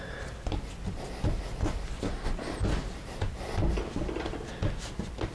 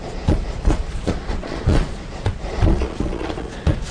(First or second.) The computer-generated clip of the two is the second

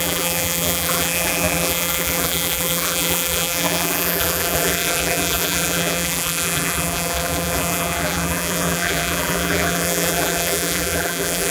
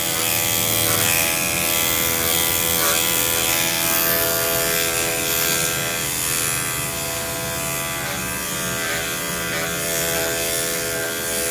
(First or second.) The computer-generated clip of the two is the first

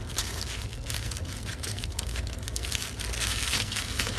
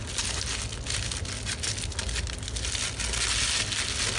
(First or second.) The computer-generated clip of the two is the first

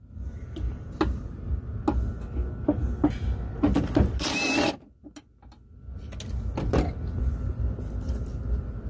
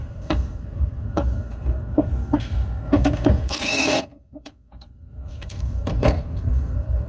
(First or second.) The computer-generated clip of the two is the second